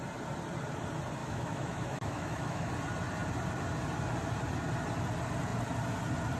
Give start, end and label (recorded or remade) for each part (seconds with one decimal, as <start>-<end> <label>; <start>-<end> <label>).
0.0-1.2 recorded; 1.2-2.7 remade; 2.7-6.4 recorded